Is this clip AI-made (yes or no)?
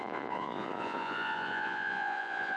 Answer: yes